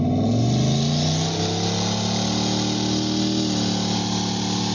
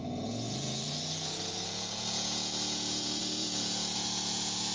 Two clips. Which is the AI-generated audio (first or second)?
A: second